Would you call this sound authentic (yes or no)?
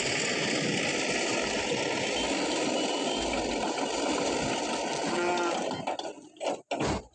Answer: yes